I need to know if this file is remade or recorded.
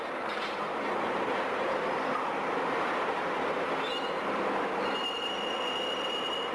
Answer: recorded